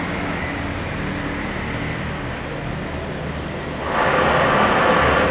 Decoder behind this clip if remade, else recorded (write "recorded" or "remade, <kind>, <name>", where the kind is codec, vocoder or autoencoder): recorded